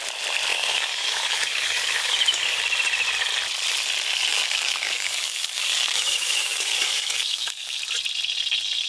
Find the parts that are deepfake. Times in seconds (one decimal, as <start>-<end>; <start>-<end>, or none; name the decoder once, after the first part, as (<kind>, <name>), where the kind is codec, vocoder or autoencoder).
0.5-2.6 (codec, DAC); 4.3-7.8